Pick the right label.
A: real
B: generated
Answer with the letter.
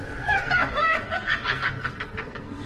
B